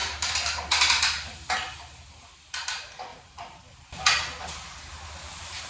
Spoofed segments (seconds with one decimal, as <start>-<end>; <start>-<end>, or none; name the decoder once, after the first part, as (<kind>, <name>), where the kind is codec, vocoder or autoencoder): 0.0-0.6 (vocoder, BigVGAN v2); 3.1-4.0